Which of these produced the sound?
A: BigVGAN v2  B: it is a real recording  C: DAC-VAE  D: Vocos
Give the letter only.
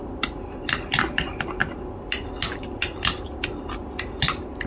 B